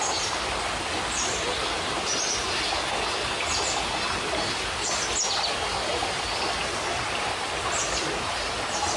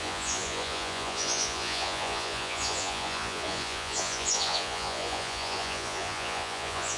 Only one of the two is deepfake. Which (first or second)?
second